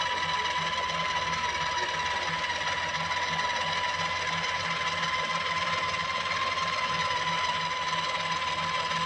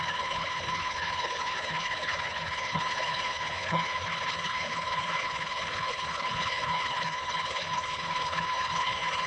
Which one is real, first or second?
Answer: first